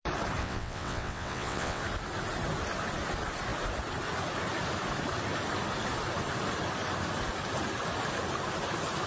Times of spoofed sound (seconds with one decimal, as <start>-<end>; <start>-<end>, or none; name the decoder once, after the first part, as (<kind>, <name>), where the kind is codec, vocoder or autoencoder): 0.4-1.8 (vocoder, WaveNeXt)